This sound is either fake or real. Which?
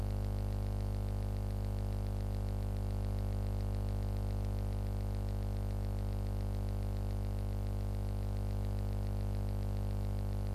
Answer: real